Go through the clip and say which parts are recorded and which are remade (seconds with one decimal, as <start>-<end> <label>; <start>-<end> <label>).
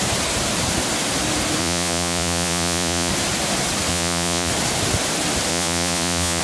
0.0-1.6 recorded; 1.6-3.1 remade; 3.1-3.9 recorded; 3.9-4.5 remade; 4.5-5.5 recorded; 5.5-6.4 remade